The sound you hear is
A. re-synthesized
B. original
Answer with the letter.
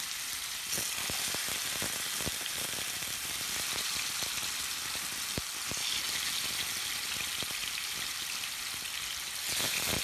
B